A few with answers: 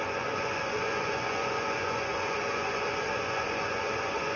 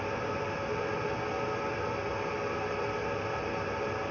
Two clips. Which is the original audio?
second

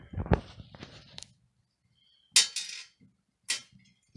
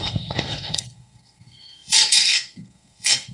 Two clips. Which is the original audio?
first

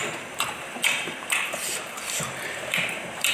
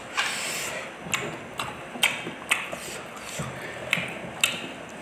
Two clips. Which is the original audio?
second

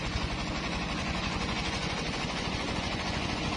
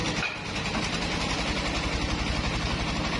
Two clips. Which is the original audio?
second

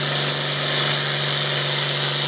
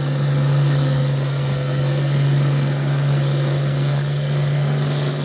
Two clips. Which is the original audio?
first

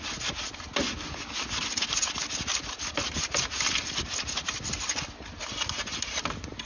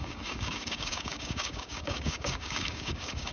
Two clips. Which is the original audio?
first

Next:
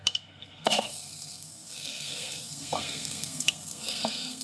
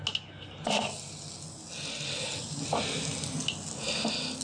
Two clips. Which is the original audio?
second